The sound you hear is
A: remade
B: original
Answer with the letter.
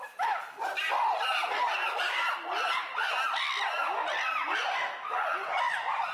B